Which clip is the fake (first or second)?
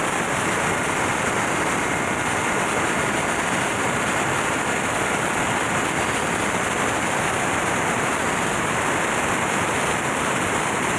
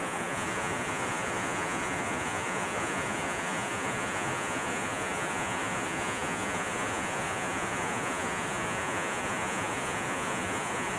second